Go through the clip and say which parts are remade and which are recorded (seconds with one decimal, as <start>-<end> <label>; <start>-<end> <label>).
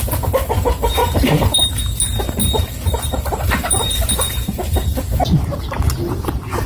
0.0-1.0 recorded; 1.0-1.6 remade; 1.6-2.4 recorded; 2.4-6.3 remade; 6.3-6.7 recorded